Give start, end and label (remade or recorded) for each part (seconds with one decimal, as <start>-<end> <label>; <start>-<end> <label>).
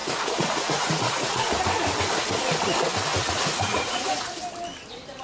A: 0.0-1.5 remade; 1.5-3.1 recorded; 3.1-4.4 remade; 4.4-5.2 recorded